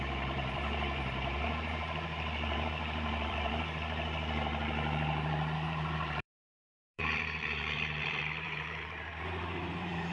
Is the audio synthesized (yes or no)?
yes